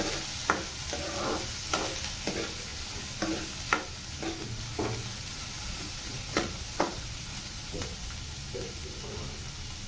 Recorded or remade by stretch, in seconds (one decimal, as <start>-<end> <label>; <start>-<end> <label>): 0.0-5.3 recorded; 5.3-8.1 remade; 8.1-9.9 recorded